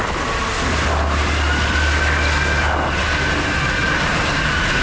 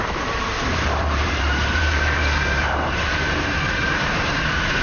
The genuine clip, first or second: first